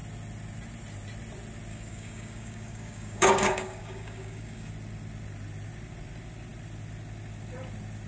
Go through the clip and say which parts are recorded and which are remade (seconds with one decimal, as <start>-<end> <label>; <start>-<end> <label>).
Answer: 0.0-1.7 recorded; 1.7-4.7 remade; 4.7-8.1 recorded